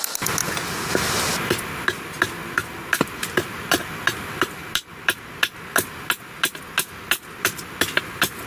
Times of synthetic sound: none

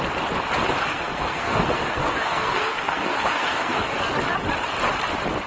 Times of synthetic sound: 0.9-4.1

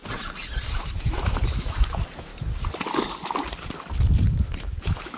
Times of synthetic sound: 0.7-2.3; 4.6-5.2

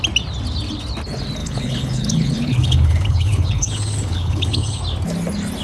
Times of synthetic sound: 1.4-4.8

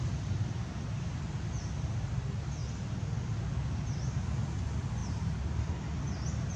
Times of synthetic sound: 5.0-5.7

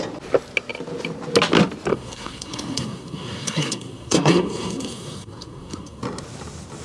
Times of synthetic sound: 1.9-6.0